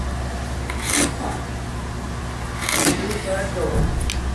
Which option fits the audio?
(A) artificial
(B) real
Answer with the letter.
B